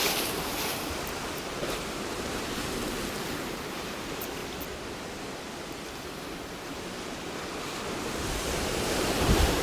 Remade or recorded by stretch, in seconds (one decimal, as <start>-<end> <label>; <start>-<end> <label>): 0.0-0.5 remade; 0.5-1.2 recorded; 1.2-4.4 remade; 4.4-8.0 recorded; 8.0-9.6 remade